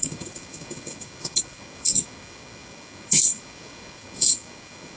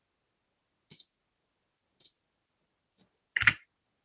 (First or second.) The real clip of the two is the second